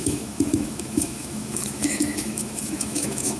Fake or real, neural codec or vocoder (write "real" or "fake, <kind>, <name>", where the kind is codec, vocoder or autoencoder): fake, autoencoder, DAC-VAE